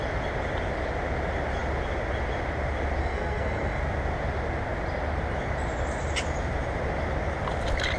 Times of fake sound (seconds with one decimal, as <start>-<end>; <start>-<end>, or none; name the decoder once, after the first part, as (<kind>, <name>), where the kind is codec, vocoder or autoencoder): 3.0-3.8 (codec, SNAC)